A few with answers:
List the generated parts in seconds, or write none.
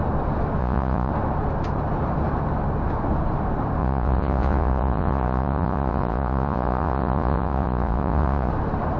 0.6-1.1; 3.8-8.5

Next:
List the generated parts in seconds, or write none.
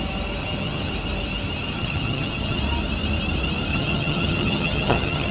0.4-0.9; 1.7-2.6; 3.7-5.3